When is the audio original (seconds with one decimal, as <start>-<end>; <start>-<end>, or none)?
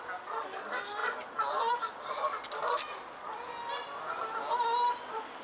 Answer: 0.0-5.4